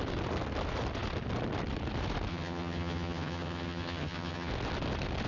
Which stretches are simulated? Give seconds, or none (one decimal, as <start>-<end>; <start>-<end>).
2.3-4.5